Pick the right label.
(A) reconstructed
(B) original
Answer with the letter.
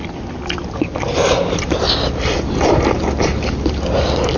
B